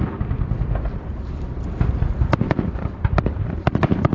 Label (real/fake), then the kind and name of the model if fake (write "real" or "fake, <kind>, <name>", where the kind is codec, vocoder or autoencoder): fake, vocoder, BigVGAN v2